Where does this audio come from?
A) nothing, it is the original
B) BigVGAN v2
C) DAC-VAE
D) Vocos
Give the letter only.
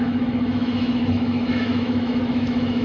C